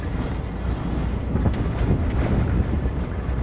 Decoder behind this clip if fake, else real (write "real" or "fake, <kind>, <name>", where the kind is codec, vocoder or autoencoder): real